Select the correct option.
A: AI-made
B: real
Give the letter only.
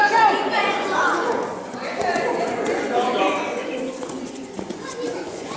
A